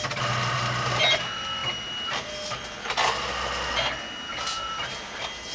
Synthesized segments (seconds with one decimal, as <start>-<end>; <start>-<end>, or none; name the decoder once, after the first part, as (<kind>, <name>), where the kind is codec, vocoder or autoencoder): none